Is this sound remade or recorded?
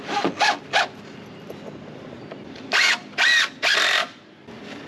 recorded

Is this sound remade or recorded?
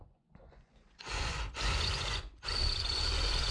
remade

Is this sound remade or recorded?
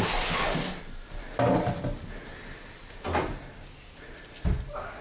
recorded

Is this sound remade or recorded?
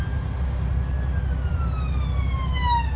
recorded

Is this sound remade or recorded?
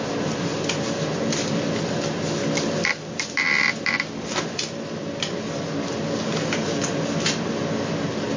recorded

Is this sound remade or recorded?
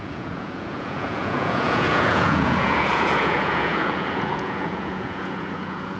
remade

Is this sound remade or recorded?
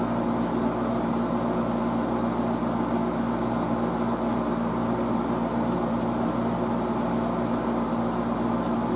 recorded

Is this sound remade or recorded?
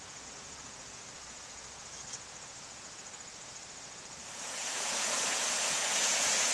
remade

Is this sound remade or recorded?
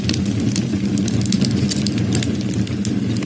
recorded